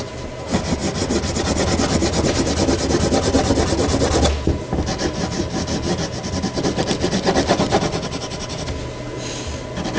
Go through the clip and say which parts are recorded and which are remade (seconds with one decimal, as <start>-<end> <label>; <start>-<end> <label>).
0.0-10.0 recorded